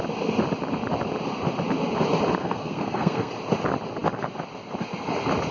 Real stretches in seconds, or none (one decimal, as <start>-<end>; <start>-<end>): 0.0-2.4; 3.3-5.5